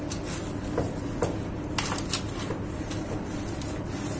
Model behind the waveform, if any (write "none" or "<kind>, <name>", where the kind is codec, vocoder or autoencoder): none